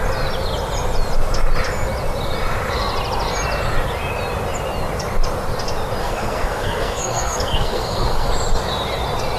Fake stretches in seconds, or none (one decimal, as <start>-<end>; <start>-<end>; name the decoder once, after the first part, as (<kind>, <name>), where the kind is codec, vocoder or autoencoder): 6.0-8.3 (codec, SNAC)